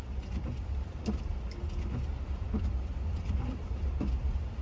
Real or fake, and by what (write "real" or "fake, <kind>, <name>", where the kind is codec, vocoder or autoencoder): real